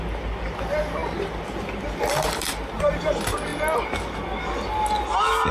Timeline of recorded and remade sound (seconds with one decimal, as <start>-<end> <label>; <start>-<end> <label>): 0.0-5.5 recorded